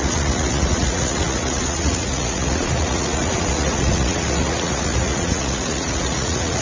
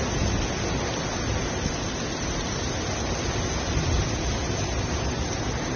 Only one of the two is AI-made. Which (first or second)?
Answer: first